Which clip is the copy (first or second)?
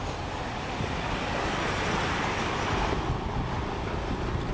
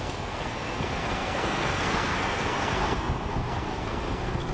second